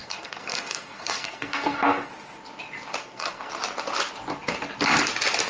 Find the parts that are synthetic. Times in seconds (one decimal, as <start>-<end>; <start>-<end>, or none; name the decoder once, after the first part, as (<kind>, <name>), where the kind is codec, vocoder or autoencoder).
0.0-2.1 (codec, SNAC); 3.0-3.5